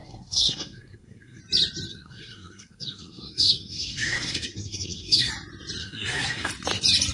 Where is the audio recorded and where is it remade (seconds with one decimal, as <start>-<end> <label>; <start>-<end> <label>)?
0.0-1.4 remade; 1.4-1.9 recorded; 1.9-5.3 remade; 5.3-5.8 recorded; 5.8-6.5 remade; 6.5-7.1 recorded